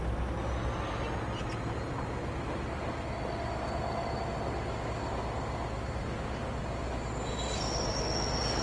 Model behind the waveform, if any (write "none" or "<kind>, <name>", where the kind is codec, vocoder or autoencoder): none